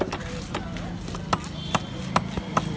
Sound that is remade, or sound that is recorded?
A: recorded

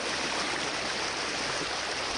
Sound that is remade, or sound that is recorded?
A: recorded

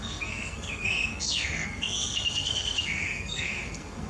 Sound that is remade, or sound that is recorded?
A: remade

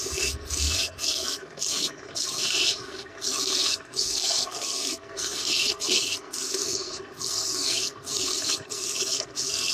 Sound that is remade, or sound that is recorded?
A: remade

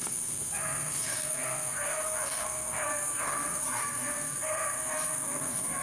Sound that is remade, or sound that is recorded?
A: remade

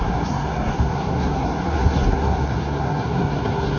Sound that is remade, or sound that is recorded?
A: remade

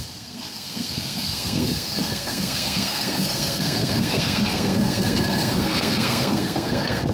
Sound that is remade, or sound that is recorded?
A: remade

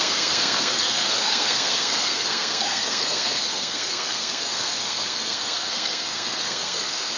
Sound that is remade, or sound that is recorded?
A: remade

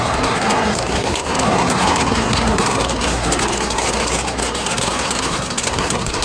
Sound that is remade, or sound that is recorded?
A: remade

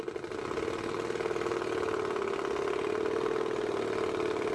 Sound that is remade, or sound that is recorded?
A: recorded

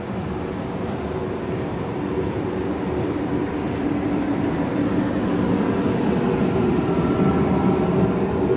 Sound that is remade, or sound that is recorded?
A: recorded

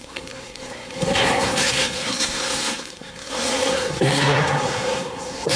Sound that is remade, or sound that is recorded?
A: remade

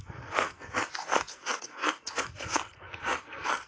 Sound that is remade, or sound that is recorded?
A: remade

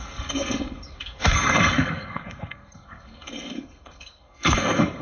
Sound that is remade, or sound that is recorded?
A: remade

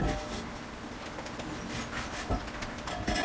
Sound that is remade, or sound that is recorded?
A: recorded